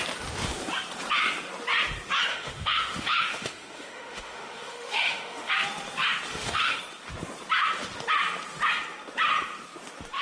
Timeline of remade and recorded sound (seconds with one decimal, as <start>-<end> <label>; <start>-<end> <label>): 0.0-2.3 recorded; 2.3-5.5 remade; 5.5-6.3 recorded; 6.3-6.8 remade; 6.8-10.2 recorded